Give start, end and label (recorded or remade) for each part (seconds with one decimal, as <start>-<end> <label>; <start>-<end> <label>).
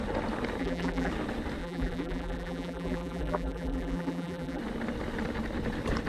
0.0-0.6 recorded; 0.6-1.1 remade; 1.1-1.6 recorded; 1.6-4.6 remade; 4.6-6.1 recorded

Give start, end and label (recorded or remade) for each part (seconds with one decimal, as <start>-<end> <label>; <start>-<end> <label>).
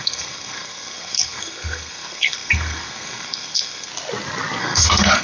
0.0-3.9 remade; 3.9-4.6 recorded; 4.6-5.2 remade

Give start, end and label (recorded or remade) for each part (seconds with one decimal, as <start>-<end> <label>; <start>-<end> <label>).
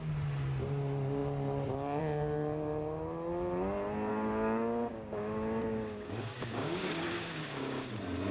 0.0-4.1 recorded; 4.1-7.9 remade; 7.9-8.3 recorded